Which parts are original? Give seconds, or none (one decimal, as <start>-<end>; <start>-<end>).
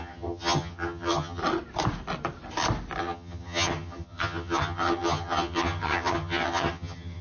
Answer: 1.4-3.0